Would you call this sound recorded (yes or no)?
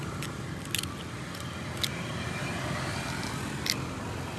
yes